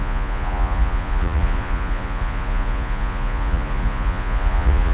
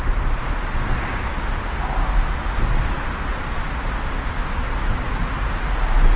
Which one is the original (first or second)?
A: second